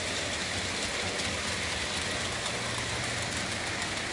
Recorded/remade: recorded